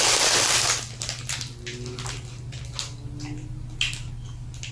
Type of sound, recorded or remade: recorded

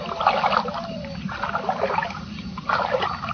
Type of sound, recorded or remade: recorded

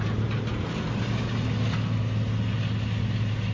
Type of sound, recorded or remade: recorded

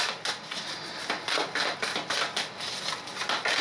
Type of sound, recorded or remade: recorded